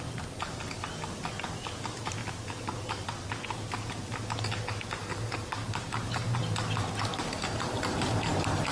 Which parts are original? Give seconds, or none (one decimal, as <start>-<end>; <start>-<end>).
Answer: 0.0-5.0; 6.4-7.1